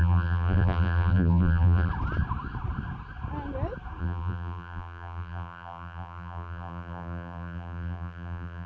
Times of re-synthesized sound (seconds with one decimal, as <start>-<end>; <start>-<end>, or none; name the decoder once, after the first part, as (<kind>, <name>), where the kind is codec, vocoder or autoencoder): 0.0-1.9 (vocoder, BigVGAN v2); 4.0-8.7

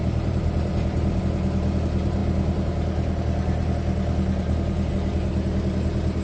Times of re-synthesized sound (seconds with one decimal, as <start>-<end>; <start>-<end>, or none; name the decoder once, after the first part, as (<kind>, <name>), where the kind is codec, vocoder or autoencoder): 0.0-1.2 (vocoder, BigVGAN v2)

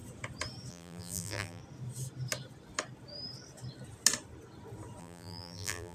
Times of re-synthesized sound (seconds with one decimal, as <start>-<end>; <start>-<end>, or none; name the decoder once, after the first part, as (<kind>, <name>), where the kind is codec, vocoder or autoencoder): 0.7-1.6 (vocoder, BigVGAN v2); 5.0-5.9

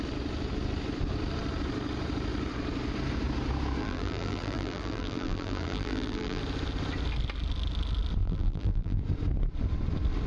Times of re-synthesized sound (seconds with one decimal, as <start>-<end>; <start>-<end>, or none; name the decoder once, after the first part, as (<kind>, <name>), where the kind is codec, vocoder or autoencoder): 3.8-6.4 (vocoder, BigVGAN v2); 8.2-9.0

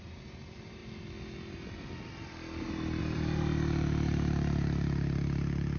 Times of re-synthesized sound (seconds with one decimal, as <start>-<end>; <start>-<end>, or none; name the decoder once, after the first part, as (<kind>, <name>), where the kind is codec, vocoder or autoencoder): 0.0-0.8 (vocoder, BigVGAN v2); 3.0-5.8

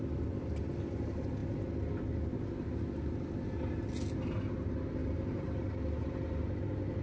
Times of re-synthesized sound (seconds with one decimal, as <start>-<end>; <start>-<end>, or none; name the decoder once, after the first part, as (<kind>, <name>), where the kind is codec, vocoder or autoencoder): 5.0-5.6 (vocoder, BigVGAN v2)